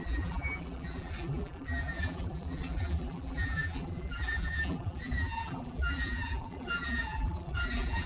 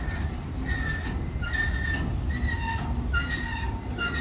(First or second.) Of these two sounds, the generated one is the first